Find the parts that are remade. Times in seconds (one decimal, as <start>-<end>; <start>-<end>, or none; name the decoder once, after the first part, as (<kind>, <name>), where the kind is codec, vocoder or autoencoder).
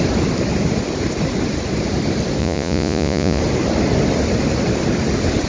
2.4-3.4 (vocoder, Vocos)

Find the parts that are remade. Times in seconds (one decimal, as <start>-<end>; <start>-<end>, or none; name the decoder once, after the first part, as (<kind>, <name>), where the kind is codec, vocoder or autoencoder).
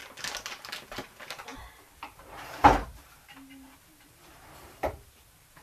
0.9-5.6 (vocoder, BigVGAN v2)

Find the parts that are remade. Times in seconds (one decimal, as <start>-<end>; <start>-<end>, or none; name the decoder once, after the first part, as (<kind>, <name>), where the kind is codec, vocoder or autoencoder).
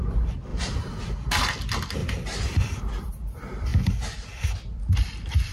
0.5-1.4 (vocoder, BigVGAN v2); 2.0-3.1; 3.7-4.4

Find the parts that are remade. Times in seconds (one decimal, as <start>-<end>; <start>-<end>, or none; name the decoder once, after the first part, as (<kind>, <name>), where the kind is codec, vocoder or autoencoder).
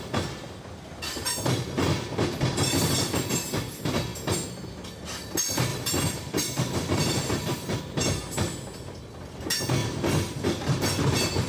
5.7-7.8 (vocoder, BigVGAN v2); 9.8-11.0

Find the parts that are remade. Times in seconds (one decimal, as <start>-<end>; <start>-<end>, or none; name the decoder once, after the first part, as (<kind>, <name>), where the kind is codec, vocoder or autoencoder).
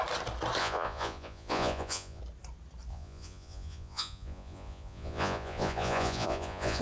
0.6-2.2 (vocoder, Vocos); 2.9-6.8